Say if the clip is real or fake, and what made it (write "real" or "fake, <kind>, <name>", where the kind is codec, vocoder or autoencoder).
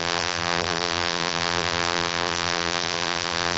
fake, vocoder, BigVGAN v2